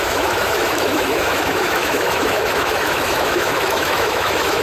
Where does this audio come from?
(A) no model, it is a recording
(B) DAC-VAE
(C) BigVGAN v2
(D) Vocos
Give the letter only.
B